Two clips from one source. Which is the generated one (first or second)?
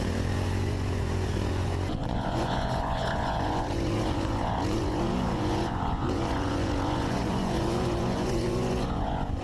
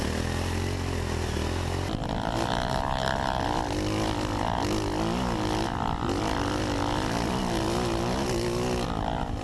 first